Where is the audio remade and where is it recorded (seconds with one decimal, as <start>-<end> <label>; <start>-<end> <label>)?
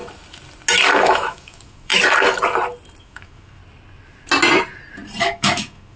0.0-1.0 recorded; 1.0-1.9 remade; 1.9-3.0 recorded; 3.0-3.6 remade; 3.6-5.2 recorded; 5.2-6.0 remade